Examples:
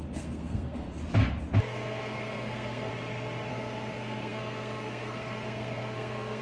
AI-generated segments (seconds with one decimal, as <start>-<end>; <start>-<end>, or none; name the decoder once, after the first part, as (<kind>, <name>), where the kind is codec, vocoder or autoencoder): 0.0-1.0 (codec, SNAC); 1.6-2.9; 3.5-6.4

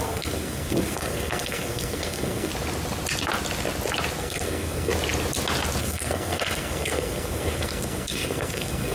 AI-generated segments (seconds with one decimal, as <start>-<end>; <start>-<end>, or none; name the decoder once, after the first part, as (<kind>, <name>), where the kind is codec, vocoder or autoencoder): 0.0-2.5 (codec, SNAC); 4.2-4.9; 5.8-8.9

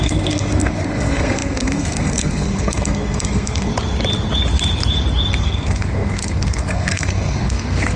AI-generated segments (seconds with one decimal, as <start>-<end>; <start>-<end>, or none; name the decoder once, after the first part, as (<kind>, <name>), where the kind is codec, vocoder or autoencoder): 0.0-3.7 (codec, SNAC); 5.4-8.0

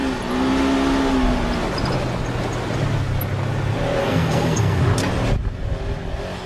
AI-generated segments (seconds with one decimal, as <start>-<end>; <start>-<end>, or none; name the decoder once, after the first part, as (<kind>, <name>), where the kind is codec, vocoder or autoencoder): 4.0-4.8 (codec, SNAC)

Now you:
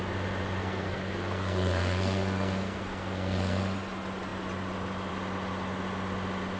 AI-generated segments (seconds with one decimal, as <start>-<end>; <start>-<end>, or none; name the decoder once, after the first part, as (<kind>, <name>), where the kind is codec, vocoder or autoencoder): 0.6-3.6 (codec, SNAC)

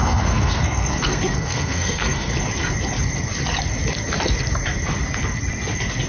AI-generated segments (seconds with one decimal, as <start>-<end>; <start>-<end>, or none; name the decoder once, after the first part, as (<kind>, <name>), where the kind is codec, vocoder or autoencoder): 0.0-2.3 (codec, SNAC)

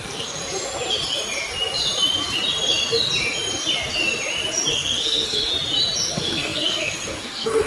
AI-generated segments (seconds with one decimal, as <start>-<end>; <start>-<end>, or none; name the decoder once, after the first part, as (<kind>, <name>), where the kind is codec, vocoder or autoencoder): 0.0-0.4 (codec, SNAC); 4.7-5.5; 6.1-7.7